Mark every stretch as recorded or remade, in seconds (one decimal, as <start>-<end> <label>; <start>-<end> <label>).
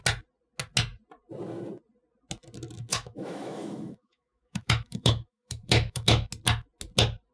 0.0-2.9 recorded; 2.9-6.3 remade; 6.3-7.3 recorded